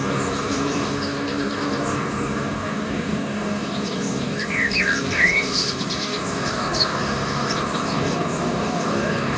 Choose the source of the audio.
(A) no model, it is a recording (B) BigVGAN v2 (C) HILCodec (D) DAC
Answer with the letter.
D